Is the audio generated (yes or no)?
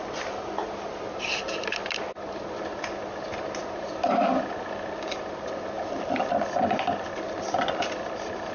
no